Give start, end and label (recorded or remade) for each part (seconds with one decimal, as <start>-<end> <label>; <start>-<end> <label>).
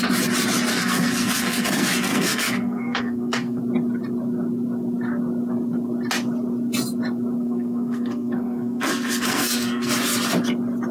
0.0-0.7 recorded; 0.7-3.6 remade; 3.6-7.4 recorded; 7.4-9.9 remade; 9.9-10.9 recorded